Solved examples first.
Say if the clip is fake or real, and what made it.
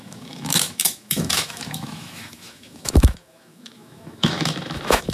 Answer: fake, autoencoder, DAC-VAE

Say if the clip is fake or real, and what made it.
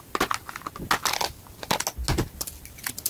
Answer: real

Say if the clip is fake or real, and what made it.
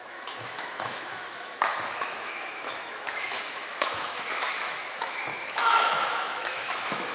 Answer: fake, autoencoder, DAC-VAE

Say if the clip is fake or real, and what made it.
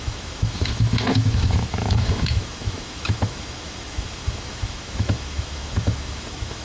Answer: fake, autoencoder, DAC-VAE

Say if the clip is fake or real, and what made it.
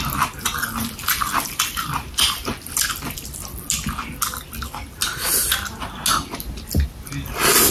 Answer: real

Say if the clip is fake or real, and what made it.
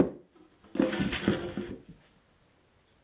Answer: real